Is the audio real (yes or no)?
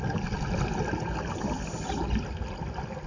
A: yes